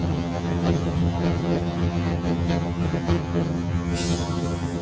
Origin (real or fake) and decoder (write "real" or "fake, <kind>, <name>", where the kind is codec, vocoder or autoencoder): fake, vocoder, HiFi-GAN